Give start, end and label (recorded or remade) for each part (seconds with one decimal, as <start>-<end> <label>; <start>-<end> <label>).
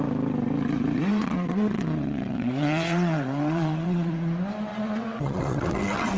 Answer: 0.0-1.1 recorded; 1.1-4.1 remade; 4.1-4.7 recorded; 4.7-6.2 remade